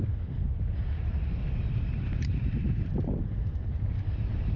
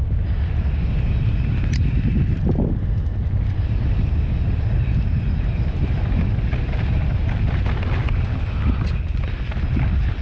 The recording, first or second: second